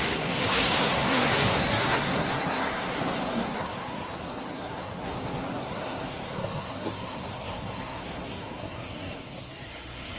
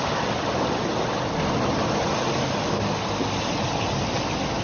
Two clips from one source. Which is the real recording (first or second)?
second